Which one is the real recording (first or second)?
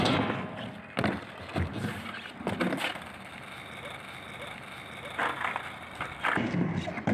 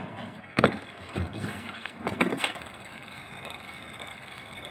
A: first